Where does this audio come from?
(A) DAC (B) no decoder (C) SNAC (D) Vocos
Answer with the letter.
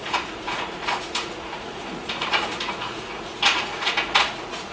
D